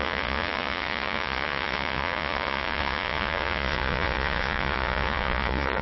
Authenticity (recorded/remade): remade